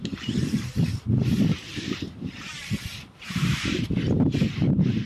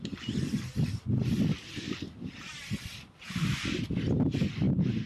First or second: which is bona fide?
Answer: second